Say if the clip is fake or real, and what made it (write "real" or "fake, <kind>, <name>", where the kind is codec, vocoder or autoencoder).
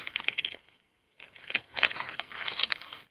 fake, codec, SNAC